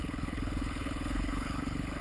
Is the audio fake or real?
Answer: fake